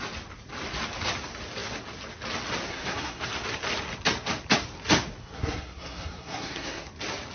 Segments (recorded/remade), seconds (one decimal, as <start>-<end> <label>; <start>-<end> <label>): 0.0-2.7 recorded; 2.7-3.2 remade; 3.2-5.2 recorded; 5.2-6.8 remade; 6.8-7.3 recorded